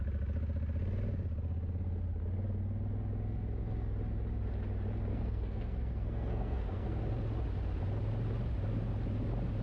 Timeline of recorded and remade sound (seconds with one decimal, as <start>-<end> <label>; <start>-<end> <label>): 0.0-5.1 recorded; 5.1-7.0 remade; 7.0-9.6 recorded